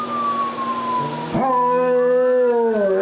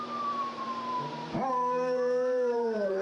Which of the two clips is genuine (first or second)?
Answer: first